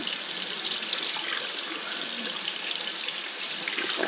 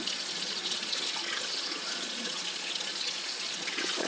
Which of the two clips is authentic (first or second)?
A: first